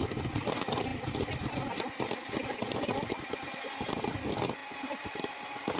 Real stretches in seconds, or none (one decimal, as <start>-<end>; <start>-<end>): 0.0-5.8